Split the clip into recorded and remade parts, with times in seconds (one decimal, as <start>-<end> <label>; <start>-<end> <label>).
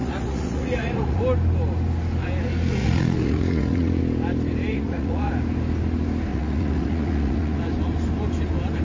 0.0-1.2 remade; 1.2-2.8 recorded; 2.8-4.0 remade; 4.0-4.7 recorded; 4.7-5.3 remade; 5.3-6.3 recorded; 6.3-7.6 remade; 7.6-8.8 recorded